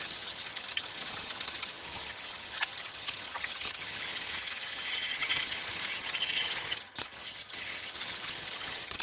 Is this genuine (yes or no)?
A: no